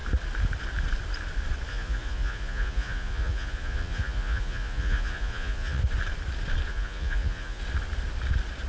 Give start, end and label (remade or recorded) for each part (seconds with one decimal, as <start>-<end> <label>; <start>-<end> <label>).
0.0-1.7 recorded; 1.7-5.8 remade; 5.8-6.7 recorded; 6.7-7.6 remade; 7.6-8.7 recorded